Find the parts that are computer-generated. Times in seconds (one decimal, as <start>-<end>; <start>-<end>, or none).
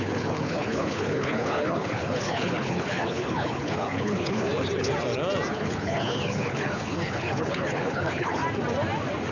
0.0-4.5; 5.5-8.4